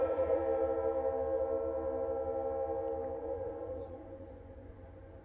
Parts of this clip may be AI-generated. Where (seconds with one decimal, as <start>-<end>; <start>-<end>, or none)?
0.0-0.4; 3.2-5.2